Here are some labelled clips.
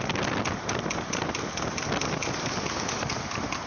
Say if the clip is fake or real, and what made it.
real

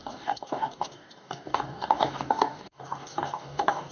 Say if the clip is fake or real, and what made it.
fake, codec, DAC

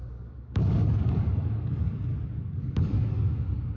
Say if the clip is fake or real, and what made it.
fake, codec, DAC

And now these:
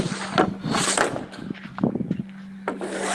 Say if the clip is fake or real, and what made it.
real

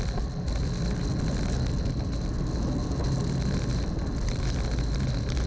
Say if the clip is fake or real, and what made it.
real